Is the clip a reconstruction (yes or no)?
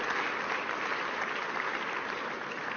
no